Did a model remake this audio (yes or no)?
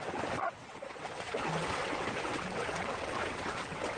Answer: yes